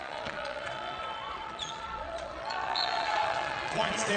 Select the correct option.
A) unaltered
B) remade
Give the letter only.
B